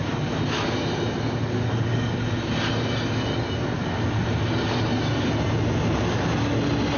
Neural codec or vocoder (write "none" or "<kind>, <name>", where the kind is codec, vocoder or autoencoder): none